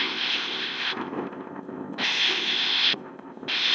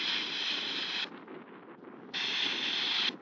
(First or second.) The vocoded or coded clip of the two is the first